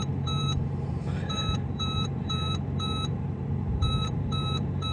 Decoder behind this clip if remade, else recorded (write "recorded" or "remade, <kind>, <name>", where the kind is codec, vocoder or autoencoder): remade, vocoder, BigVGAN v2